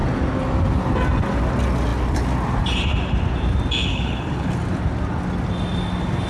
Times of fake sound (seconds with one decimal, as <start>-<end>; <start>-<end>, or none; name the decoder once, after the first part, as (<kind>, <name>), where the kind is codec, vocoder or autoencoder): 3.9-4.5 (codec, HILCodec)